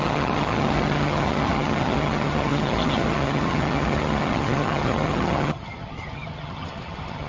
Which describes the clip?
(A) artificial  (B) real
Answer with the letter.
A